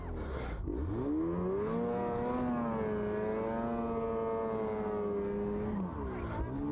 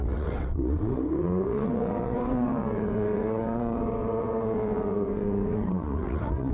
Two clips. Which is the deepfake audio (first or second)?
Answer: second